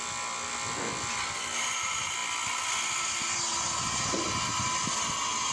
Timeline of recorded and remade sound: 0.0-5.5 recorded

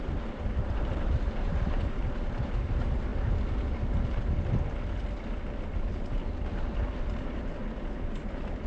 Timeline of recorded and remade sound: 0.0-3.1 remade; 3.1-7.0 recorded; 7.0-7.6 remade; 7.6-8.7 recorded